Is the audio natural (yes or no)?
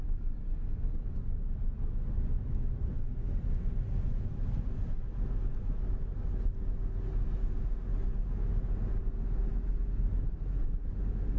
yes